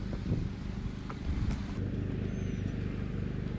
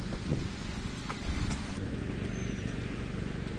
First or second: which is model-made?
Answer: second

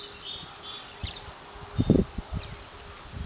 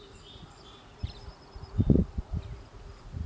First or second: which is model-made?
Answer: second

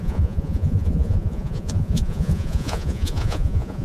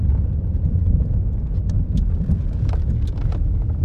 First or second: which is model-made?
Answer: first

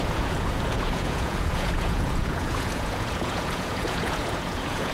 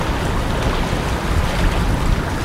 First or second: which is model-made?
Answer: first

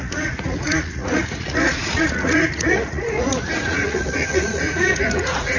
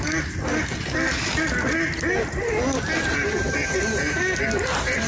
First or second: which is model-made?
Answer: first